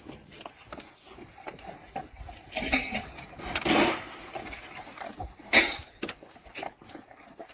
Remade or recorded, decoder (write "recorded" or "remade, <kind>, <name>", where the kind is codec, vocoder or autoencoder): remade, vocoder, BigVGAN v2